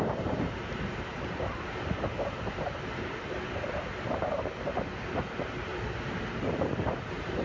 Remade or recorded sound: remade